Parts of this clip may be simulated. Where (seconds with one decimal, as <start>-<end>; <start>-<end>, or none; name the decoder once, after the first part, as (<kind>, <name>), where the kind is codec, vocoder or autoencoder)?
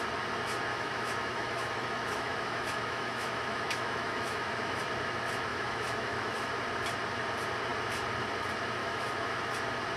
0.7-4.8 (autoencoder, DAC-VAE); 5.5-6.5; 8.8-9.5